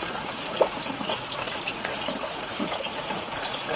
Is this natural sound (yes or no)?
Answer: no